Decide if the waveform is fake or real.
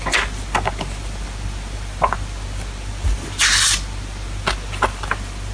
real